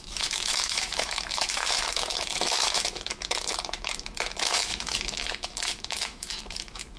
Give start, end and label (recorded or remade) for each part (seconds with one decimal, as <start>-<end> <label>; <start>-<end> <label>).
0.0-7.0 remade